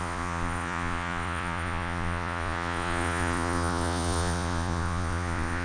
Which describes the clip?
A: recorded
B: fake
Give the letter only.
B